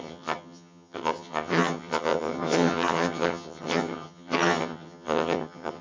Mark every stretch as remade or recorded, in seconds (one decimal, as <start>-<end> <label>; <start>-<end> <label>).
0.0-5.8 remade